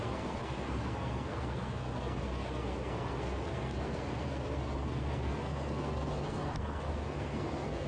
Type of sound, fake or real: fake